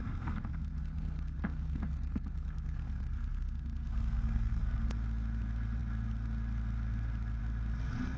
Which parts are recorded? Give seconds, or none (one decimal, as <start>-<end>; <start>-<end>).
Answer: 4.9-8.2